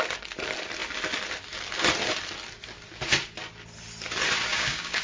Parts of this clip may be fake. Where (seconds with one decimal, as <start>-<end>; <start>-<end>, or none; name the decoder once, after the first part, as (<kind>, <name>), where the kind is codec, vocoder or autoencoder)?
4.5-5.0 (codec, DAC)